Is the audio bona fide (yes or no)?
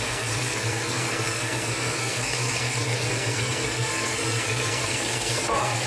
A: no